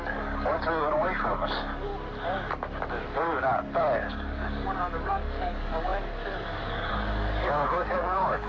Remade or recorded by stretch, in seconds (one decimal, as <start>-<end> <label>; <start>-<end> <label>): 0.0-1.9 remade; 1.9-4.1 recorded; 4.1-8.5 remade